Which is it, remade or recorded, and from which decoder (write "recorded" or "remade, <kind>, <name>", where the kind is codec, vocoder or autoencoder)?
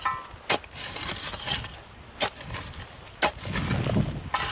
recorded